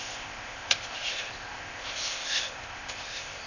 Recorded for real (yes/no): no